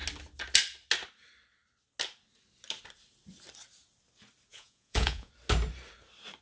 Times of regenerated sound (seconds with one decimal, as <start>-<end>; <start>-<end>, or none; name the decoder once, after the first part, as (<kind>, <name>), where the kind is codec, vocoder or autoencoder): 4.5-5.3 (vocoder, Vocos)